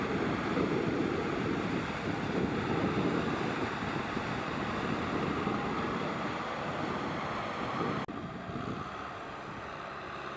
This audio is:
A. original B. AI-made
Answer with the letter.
A